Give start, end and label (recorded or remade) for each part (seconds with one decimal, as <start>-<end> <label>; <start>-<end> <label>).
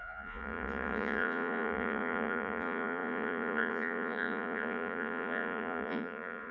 0.0-6.5 remade